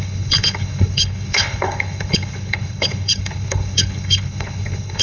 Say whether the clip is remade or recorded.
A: remade